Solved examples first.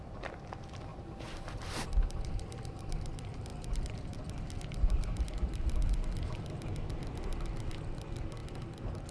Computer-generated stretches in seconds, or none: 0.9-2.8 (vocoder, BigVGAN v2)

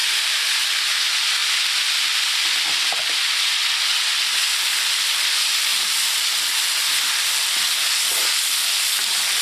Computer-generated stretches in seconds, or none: 0.0-0.8 (vocoder, BigVGAN v2)

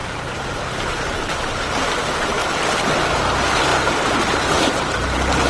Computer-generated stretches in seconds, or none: 0.0-2.4 (vocoder, BigVGAN v2); 3.1-3.7; 4.5-5.5

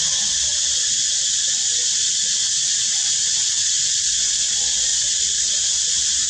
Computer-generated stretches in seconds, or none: 0.5-4.3 (vocoder, BigVGAN v2); 4.9-5.5

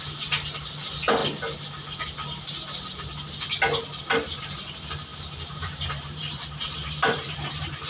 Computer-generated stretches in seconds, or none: 5.1-7.9 (vocoder, BigVGAN v2)

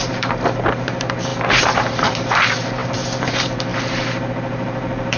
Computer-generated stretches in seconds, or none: 0.0-5.2 (vocoder, BigVGAN v2)

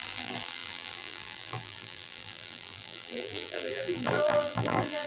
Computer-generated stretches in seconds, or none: 0.0-5.1 (vocoder, BigVGAN v2)

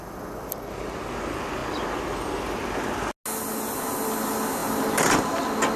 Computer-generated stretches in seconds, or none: none